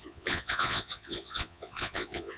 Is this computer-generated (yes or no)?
yes